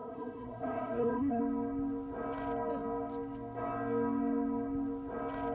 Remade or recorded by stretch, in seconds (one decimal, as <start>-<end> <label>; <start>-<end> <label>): 0.0-1.4 remade; 1.4-5.5 recorded